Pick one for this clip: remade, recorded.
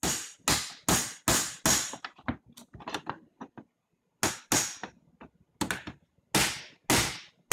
recorded